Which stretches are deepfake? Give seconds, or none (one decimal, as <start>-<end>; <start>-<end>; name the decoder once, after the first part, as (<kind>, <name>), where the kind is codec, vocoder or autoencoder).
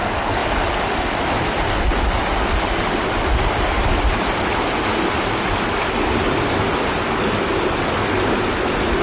none